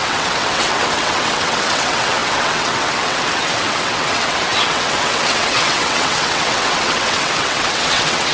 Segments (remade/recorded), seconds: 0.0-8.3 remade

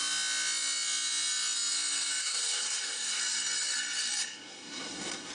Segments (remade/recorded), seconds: 0.0-2.2 recorded; 2.2-3.2 remade; 3.2-4.2 recorded; 4.2-5.3 remade